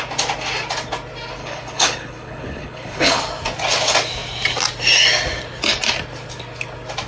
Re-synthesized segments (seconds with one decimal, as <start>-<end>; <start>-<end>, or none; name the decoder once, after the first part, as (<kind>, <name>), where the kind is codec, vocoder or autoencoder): 1.4-3.2 (codec, HILCodec)